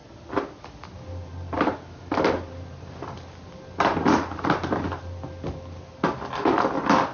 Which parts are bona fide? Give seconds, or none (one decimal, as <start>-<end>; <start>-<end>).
0.0-7.1